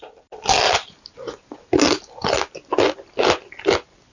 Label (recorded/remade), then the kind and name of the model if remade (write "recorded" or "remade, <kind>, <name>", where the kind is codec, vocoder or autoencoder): recorded